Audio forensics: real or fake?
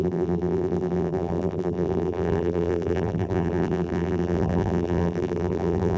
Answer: fake